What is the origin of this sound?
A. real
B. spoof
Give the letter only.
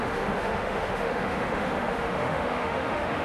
B